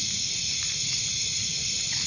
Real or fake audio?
fake